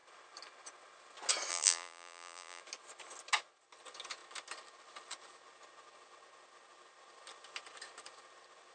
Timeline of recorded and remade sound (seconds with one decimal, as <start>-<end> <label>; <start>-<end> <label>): 0.0-1.5 recorded; 1.5-2.6 remade; 2.6-8.7 recorded